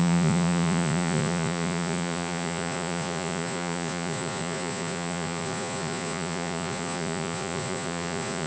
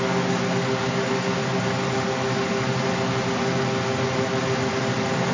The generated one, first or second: first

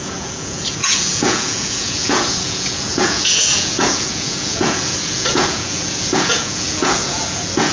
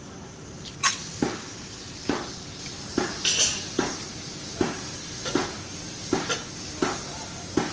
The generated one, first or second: first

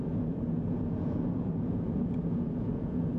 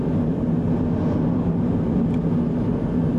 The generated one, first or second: first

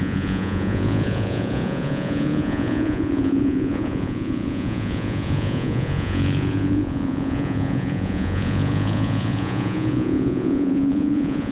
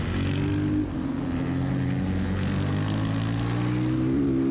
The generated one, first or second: first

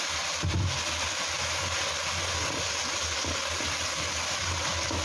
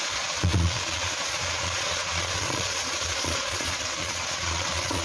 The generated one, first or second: second